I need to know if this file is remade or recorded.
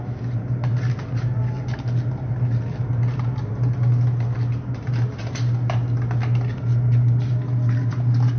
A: recorded